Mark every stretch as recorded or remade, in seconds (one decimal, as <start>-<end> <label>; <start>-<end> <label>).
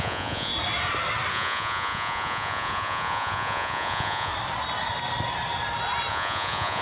0.0-0.5 remade; 0.5-1.3 recorded; 1.3-4.3 remade; 4.3-6.1 recorded; 6.1-6.8 remade